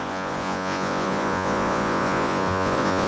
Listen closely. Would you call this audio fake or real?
fake